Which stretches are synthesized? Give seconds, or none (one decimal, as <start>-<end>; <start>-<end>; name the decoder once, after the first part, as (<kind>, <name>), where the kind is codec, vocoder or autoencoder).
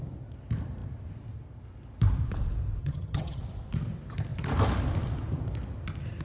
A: 2.8-3.4 (vocoder, HiFi-GAN)